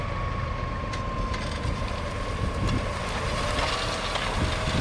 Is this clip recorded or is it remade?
recorded